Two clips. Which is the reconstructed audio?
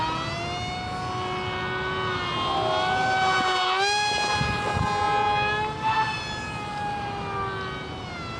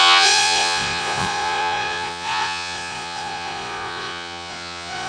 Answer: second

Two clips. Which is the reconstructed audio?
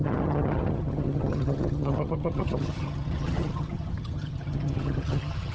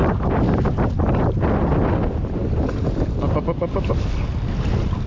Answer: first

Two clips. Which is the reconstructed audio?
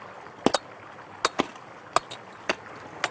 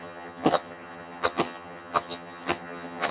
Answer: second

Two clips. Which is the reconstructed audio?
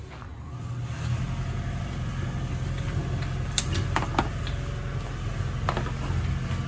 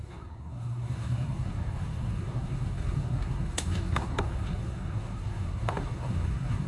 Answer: second